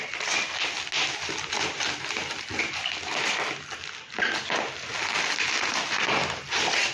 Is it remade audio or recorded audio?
recorded